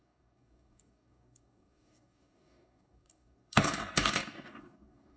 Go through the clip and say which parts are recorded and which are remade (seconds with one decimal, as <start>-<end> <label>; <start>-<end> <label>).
0.0-5.2 remade